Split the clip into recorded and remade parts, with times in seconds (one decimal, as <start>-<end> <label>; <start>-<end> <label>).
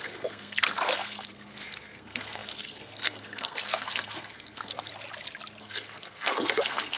0.0-4.9 remade; 4.9-5.6 recorded; 5.6-7.0 remade